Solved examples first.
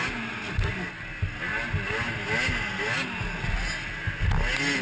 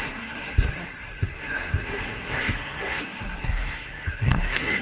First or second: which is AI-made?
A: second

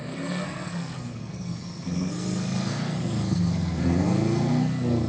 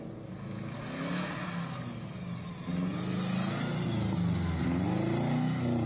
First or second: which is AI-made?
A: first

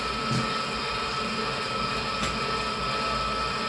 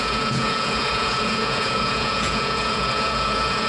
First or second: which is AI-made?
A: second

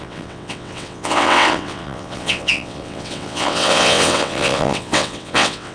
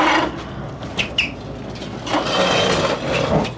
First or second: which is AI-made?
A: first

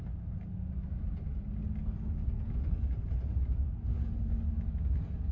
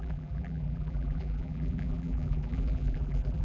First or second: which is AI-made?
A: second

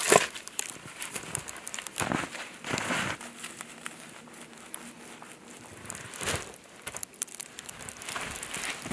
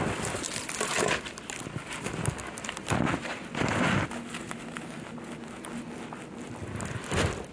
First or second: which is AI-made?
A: first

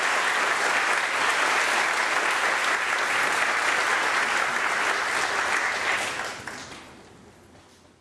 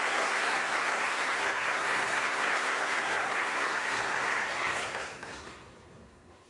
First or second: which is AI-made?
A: second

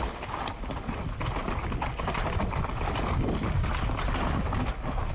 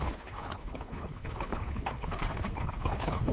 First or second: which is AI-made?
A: second